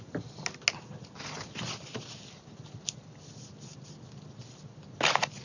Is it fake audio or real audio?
real